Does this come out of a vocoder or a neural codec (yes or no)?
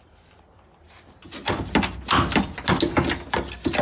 no